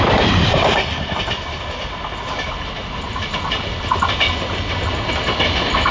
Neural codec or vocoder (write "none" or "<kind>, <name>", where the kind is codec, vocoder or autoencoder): none